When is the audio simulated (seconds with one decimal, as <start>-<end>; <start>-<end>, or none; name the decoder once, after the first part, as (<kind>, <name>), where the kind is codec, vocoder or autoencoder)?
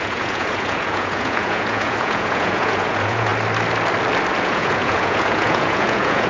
0.0-3.3 (vocoder, Vocos); 4.4-6.3